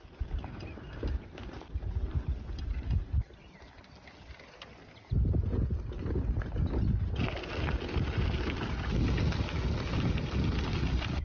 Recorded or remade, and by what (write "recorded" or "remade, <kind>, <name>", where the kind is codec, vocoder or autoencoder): recorded